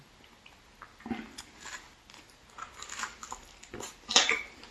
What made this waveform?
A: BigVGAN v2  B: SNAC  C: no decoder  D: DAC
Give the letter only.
C